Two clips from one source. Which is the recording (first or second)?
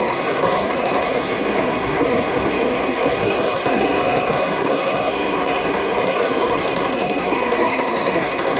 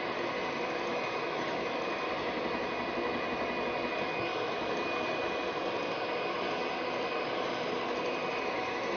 second